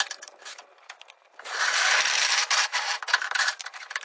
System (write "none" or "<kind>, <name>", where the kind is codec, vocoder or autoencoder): vocoder, BigVGAN v2